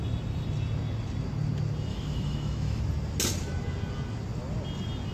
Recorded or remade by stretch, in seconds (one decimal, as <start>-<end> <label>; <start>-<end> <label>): 0.0-1.9 recorded; 1.9-2.8 remade; 2.8-5.1 recorded